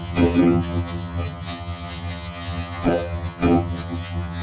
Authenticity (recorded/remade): remade